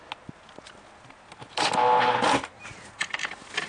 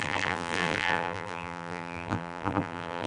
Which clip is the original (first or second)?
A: first